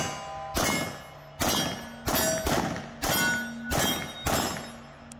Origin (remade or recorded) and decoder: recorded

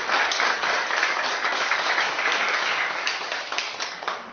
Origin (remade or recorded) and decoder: remade, codec, DAC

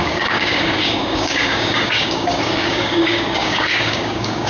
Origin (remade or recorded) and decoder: remade, codec, DAC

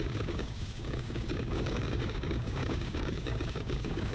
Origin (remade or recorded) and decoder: remade, codec, DAC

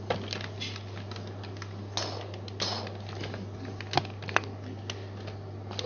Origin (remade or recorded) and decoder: recorded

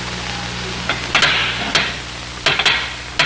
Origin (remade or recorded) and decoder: recorded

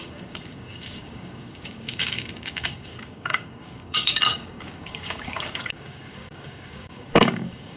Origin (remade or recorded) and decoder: remade, codec, DAC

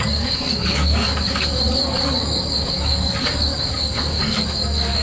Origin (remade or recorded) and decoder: remade, codec, DAC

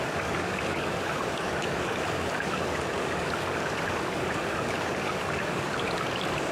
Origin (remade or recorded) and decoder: remade, codec, DAC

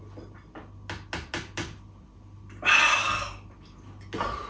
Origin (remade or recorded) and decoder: recorded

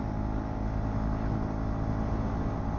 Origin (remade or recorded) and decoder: recorded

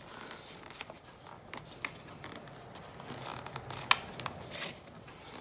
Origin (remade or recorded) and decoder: recorded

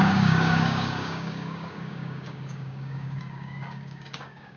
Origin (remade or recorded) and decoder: remade, codec, DAC